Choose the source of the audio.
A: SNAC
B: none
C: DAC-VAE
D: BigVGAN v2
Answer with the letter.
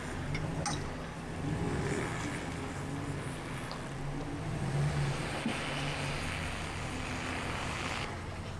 B